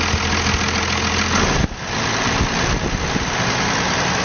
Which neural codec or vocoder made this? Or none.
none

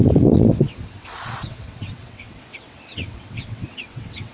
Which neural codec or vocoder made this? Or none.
vocoder, WaveNeXt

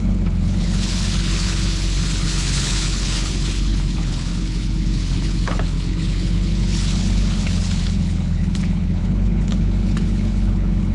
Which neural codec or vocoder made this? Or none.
codec, HILCodec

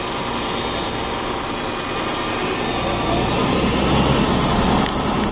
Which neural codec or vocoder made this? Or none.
none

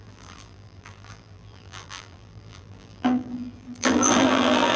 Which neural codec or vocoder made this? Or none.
vocoder, BigVGAN v2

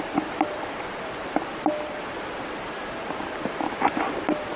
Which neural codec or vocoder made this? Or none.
none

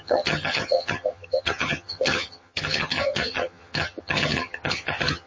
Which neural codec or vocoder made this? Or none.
vocoder, HiFi-GAN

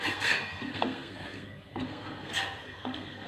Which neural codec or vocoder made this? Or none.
codec, SNAC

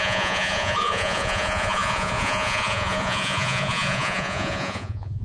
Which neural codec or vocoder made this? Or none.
vocoder, Vocos